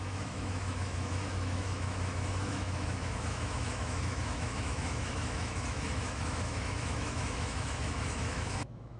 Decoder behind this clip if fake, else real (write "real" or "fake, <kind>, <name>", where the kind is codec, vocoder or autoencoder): fake, autoencoder, DAC-VAE